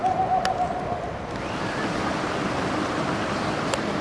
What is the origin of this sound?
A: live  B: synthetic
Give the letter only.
A